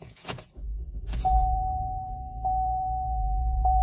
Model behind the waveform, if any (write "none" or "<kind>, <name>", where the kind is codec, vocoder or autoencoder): vocoder, Vocos